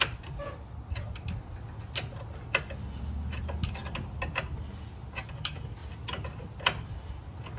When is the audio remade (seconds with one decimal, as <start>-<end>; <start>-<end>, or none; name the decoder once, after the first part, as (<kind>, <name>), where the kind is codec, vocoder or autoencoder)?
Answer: none